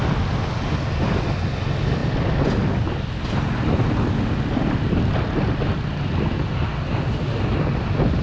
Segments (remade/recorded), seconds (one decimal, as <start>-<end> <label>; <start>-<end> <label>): 0.0-8.2 recorded